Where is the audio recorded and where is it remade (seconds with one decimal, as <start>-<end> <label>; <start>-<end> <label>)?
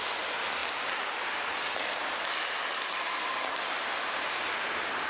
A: 0.0-5.1 recorded